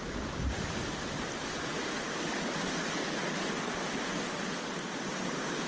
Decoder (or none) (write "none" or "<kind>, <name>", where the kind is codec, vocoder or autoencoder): none